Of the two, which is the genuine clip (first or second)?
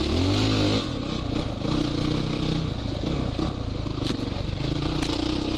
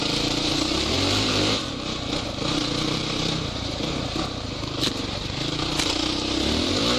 first